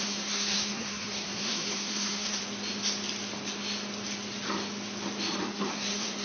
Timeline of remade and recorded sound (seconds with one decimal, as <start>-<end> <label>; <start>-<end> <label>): 0.0-2.4 remade; 2.4-5.7 recorded; 5.7-6.2 remade